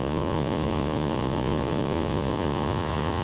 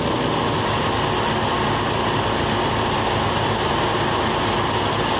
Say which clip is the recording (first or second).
second